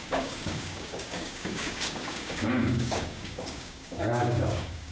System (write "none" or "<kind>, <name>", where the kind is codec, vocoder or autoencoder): codec, DAC